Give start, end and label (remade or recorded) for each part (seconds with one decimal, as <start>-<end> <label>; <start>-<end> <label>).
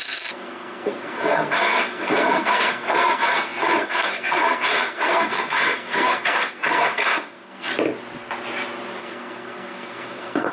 0.0-7.7 remade; 7.7-9.0 recorded; 9.0-10.5 remade